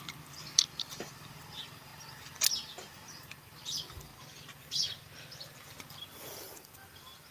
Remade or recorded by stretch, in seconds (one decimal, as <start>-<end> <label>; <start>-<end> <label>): 0.0-4.1 remade; 4.1-5.9 recorded; 5.9-7.3 remade